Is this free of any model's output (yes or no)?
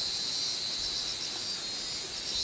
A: yes